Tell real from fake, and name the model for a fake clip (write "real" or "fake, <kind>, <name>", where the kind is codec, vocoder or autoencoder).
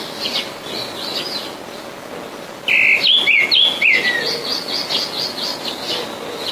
real